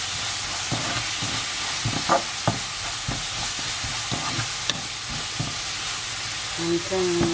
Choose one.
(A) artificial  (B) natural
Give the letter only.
B